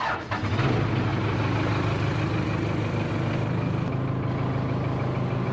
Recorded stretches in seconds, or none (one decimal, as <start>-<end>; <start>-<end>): 0.0-5.5